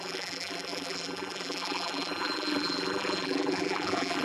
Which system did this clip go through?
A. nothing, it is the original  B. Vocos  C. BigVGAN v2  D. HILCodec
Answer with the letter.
C